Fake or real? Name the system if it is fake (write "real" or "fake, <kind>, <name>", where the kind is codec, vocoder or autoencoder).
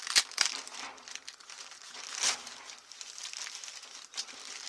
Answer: real